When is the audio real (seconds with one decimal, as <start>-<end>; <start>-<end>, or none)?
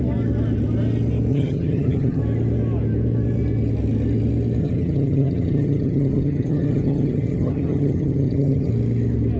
0.0-1.3; 2.2-4.6; 8.7-9.4